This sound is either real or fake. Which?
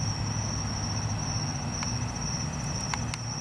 real